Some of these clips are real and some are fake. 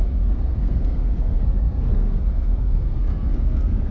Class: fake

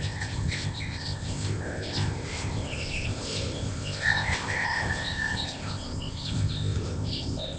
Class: fake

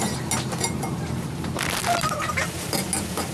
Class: real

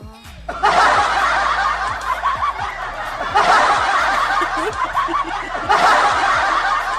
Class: real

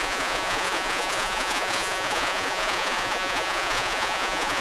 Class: fake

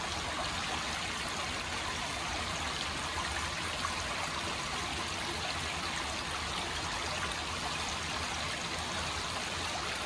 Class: real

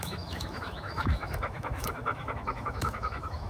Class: fake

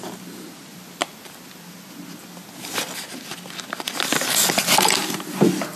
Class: real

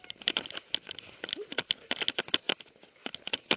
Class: real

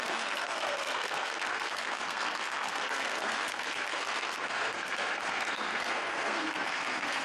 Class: fake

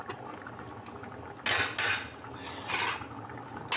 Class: real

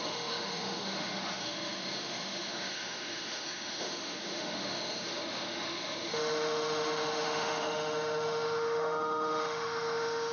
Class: fake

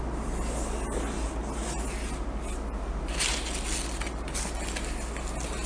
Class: real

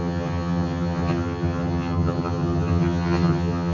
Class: fake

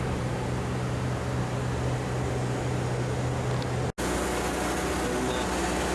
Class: real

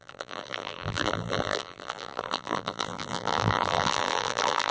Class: fake